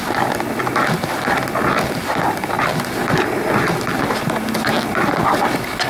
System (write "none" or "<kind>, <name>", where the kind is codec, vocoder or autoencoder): none